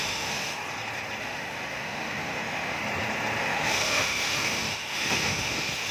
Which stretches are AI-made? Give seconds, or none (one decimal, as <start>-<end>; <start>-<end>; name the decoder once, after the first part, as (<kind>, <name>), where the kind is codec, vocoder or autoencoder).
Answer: 0.0-0.6 (autoencoder, DAC-VAE); 1.2-2.8; 3.4-5.9